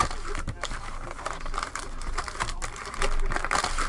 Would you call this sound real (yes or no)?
yes